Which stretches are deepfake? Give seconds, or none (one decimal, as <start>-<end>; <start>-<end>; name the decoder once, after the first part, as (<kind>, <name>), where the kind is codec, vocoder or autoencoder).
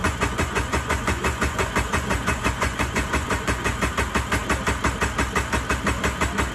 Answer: 0.0-3.9 (vocoder, Vocos)